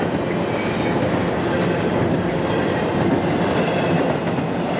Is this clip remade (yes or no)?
no